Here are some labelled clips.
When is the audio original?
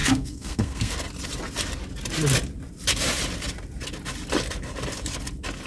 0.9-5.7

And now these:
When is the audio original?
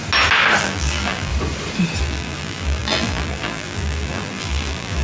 0.0-0.6; 1.3-2.0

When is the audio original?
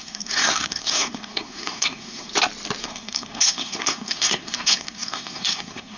2.3-2.8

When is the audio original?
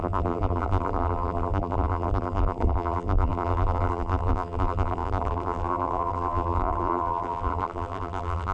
none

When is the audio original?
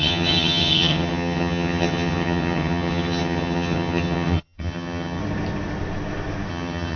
5.2-6.5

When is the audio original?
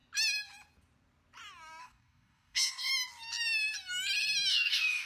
0.0-1.8; 2.9-4.5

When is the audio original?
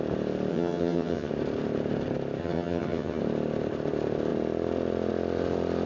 0.0-0.5; 1.3-2.4; 3.2-5.9